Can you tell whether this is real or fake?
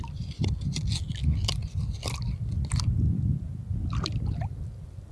real